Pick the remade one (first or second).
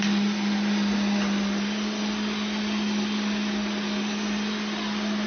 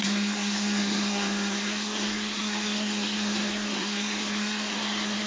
second